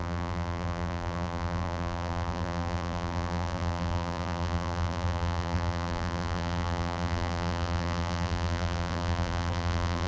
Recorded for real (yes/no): no